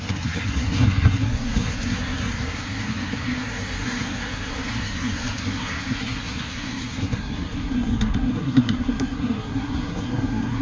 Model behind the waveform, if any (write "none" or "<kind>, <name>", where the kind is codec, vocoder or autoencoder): codec, SNAC